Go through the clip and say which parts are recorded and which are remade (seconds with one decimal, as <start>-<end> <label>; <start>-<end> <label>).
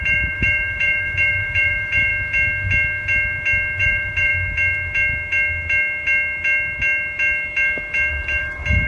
0.0-2.1 remade; 2.1-3.8 recorded; 3.8-4.3 remade; 4.3-8.1 recorded; 8.1-8.9 remade